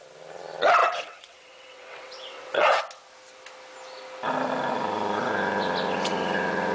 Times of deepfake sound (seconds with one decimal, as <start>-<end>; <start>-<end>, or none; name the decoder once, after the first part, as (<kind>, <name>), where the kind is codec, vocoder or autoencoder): 0.8-2.8 (vocoder, WaveNeXt)